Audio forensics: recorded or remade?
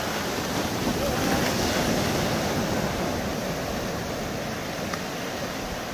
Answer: recorded